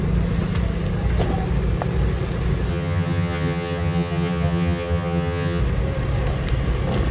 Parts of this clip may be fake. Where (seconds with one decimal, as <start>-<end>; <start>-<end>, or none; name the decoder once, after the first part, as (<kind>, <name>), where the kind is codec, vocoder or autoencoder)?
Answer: 2.7-5.6 (vocoder, HiFi-GAN)